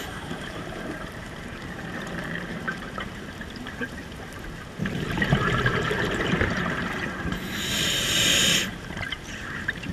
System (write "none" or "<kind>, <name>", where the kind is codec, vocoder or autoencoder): vocoder, BigVGAN v2